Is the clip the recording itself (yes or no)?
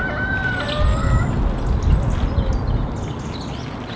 yes